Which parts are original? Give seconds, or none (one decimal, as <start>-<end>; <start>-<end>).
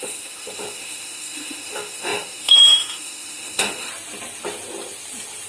3.9-5.5